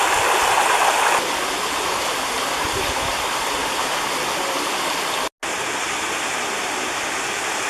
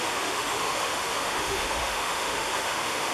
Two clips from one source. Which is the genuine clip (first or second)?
first